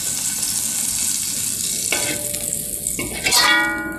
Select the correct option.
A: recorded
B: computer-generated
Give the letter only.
A